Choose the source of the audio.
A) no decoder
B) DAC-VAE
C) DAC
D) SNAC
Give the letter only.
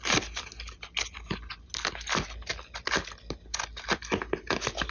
A